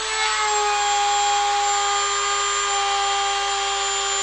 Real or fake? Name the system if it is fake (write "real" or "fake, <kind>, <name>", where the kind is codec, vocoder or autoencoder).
real